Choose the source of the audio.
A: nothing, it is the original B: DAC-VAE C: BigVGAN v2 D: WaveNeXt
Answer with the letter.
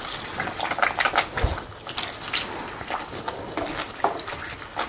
A